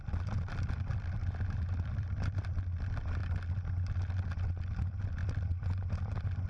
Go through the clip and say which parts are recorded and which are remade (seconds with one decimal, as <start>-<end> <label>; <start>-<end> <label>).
0.0-0.9 recorded; 0.9-2.5 remade; 2.5-5.2 recorded; 5.2-6.5 remade